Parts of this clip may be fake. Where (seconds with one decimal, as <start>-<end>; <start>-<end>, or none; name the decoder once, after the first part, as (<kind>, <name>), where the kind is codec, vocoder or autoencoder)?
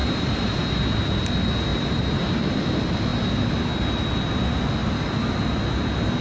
0.0-0.6 (vocoder, BigVGAN v2); 1.7-2.2